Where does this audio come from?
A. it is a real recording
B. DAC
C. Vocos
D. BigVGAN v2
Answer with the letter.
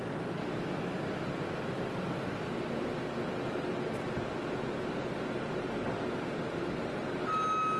A